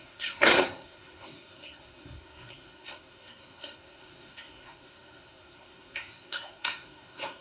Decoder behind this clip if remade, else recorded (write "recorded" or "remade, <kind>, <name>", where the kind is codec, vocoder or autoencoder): remade, codec, SNAC